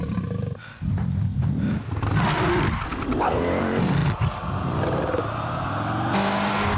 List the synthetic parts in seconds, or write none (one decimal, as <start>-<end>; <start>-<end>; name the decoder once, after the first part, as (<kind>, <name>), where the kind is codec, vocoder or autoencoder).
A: 0.0-4.0 (vocoder, BigVGAN v2)